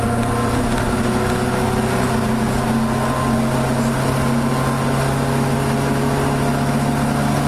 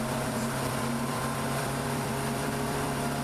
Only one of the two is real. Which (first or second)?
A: first